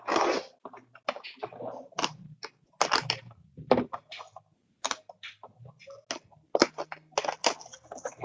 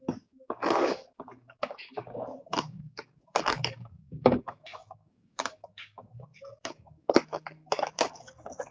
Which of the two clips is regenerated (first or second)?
second